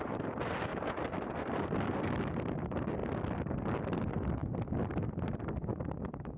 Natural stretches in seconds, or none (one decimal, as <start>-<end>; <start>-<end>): 0.0-6.4